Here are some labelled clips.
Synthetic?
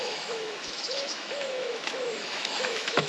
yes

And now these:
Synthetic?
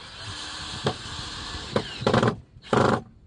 no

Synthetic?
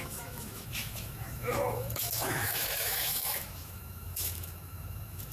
yes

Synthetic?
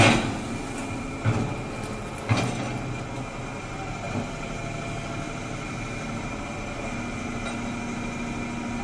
no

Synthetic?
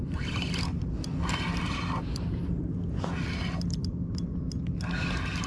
no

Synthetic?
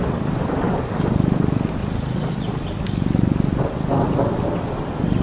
no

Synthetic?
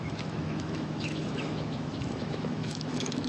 yes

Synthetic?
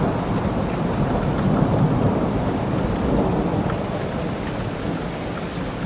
no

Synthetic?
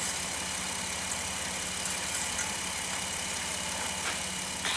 no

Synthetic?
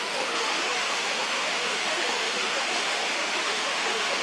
yes